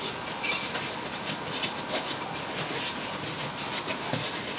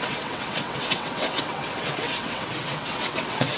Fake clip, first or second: second